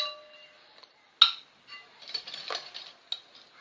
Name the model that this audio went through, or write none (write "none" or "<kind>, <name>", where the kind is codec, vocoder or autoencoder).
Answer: none